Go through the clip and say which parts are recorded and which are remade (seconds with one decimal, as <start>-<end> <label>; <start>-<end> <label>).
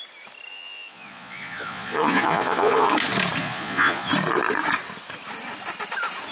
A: 0.0-0.5 recorded; 0.5-2.9 remade; 2.9-3.4 recorded; 3.4-4.1 remade; 4.1-6.3 recorded